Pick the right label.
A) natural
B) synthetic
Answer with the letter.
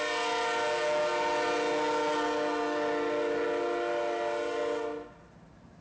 A